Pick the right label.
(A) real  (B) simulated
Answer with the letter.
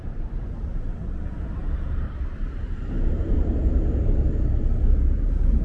B